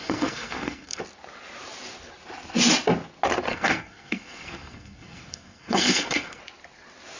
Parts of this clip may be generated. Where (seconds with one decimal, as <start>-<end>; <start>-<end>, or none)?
0.0-1.0; 3.5-6.4